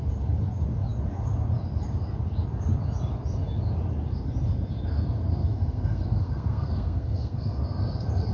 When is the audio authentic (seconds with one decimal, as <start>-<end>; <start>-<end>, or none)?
0.0-5.4; 7.6-8.3